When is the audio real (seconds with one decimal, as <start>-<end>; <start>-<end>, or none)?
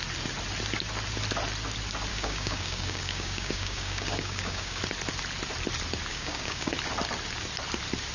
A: 0.0-2.1; 4.8-6.1; 6.7-8.1